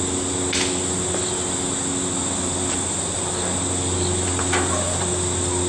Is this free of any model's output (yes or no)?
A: yes